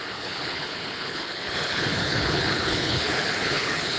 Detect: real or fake fake